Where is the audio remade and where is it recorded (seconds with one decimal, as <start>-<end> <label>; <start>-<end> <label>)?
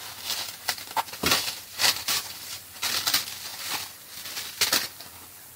0.0-1.7 recorded; 1.7-2.9 remade; 2.9-5.6 recorded